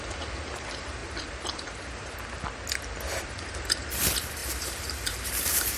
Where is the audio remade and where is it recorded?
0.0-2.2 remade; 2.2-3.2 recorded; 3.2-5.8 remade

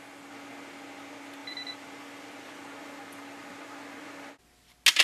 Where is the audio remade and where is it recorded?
0.0-1.4 recorded; 1.4-2.6 remade; 2.6-5.0 recorded

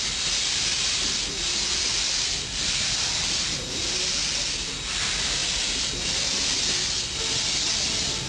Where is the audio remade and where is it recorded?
0.0-3.2 recorded; 3.2-3.8 remade; 3.8-8.3 recorded

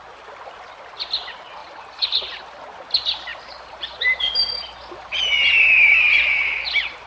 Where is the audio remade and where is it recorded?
0.0-1.6 recorded; 1.6-2.6 remade; 2.6-4.8 recorded; 4.8-5.3 remade; 5.3-7.1 recorded